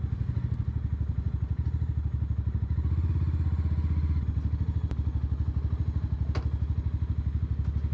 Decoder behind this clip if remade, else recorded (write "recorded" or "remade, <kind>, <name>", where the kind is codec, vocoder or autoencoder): recorded